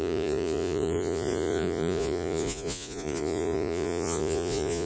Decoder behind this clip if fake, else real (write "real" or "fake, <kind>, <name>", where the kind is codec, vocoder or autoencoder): fake, vocoder, Vocos